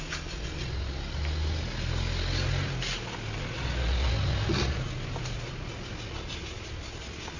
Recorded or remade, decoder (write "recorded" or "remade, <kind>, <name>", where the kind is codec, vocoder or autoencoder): recorded